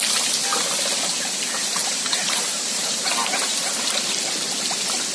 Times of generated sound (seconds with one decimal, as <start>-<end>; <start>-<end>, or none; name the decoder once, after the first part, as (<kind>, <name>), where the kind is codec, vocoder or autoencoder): 1.8-3.7 (vocoder, BigVGAN v2)